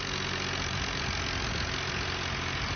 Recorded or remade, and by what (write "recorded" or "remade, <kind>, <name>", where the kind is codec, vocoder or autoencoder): recorded